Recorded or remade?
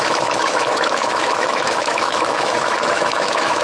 remade